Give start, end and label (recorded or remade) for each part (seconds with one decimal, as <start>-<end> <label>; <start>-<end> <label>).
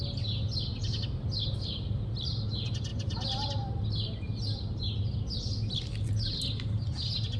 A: 0.0-7.4 recorded